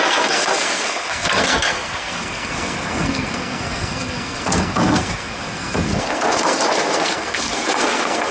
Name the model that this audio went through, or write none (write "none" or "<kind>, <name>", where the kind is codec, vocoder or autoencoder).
codec, SNAC